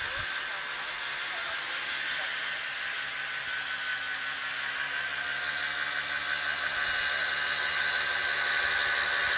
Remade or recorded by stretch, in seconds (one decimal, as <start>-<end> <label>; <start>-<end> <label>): 0.0-9.4 recorded